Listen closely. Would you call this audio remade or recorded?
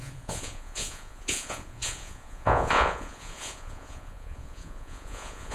remade